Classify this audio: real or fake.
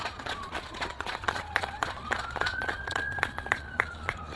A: fake